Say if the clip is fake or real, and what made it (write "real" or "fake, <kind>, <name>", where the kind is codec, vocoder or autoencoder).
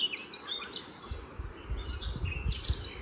real